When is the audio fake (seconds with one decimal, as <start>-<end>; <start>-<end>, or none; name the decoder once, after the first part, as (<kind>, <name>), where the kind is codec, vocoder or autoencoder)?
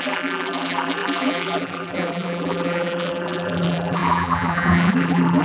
0.0-5.4 (vocoder, BigVGAN v2)